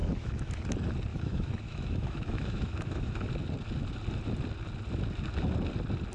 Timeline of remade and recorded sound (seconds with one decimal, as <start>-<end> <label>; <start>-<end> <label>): 0.0-0.5 remade; 0.5-1.1 recorded; 1.1-3.3 remade; 3.3-6.1 recorded